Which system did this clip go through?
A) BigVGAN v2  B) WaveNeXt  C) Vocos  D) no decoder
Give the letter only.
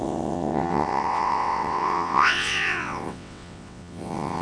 B